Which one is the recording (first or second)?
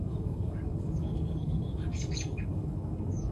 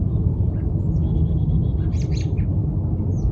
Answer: second